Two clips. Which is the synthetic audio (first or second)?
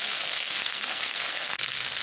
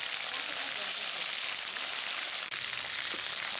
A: first